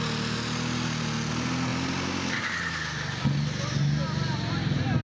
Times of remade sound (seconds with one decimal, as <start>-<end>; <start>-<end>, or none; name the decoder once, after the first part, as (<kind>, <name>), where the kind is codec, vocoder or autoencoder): none